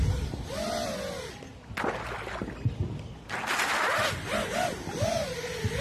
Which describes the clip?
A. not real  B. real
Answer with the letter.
B